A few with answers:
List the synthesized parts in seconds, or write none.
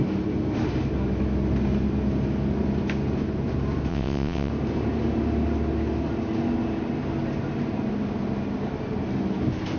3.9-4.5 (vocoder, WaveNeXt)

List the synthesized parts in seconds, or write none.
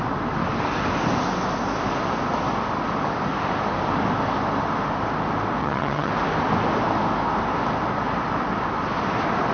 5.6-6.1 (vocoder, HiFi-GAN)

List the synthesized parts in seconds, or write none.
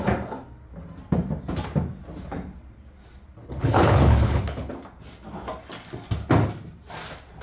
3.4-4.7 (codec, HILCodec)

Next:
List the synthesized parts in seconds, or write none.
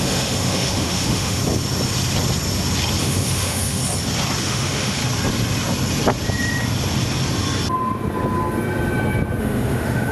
0.0-1.4 (autoencoder, DAC-VAE); 3.0-3.8; 4.4-5.0; 9.4-10.1